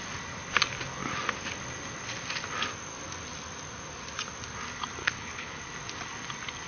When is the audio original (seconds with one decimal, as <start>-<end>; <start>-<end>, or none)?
0.0-5.0; 5.6-6.7